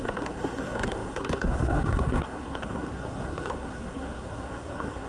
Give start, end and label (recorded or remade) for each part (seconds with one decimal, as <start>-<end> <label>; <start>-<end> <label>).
0.0-5.1 remade